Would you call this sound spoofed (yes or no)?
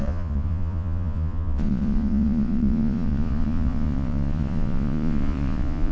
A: yes